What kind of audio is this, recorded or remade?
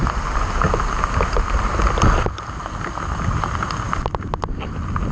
recorded